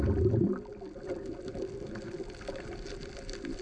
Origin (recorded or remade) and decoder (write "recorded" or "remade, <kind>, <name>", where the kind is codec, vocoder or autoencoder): recorded